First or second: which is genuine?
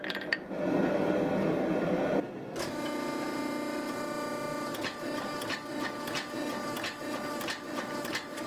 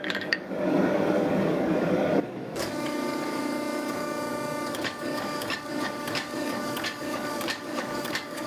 first